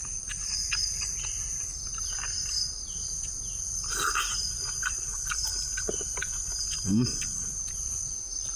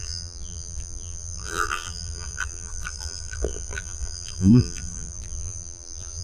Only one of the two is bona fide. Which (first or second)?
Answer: first